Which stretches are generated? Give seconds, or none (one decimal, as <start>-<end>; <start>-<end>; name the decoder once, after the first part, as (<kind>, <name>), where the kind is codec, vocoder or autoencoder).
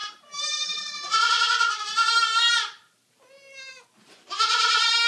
none